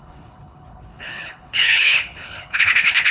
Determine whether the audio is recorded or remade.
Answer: remade